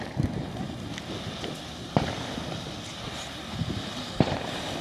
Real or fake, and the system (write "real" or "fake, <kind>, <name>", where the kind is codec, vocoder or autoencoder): real